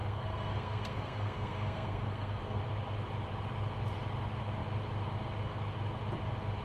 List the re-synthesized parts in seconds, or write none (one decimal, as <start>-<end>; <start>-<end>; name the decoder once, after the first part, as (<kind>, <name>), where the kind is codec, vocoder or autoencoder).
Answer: 0.0-2.6 (codec, SNAC)